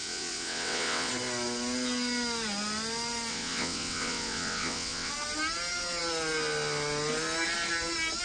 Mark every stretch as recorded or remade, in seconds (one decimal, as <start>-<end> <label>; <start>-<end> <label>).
0.0-1.1 remade; 1.1-3.3 recorded; 3.3-5.1 remade; 5.1-8.2 recorded